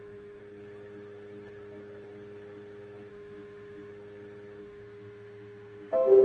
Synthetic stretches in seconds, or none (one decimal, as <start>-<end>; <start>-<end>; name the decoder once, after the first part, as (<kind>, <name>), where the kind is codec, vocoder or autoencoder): 0.0-0.4 (autoencoder, DAC-VAE); 3.1-3.9; 4.6-6.2